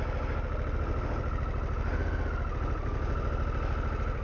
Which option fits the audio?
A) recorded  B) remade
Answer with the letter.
A